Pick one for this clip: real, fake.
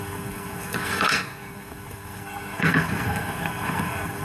fake